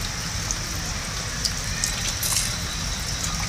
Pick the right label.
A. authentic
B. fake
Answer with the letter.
A